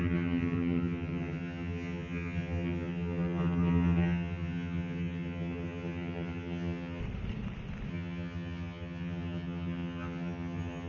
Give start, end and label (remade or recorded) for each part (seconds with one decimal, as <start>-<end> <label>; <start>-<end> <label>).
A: 0.0-7.0 remade; 7.0-7.9 recorded; 7.9-10.9 remade